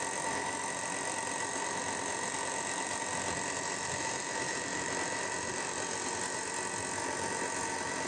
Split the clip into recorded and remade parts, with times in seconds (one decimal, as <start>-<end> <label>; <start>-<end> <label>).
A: 0.0-7.0 recorded; 7.0-8.1 remade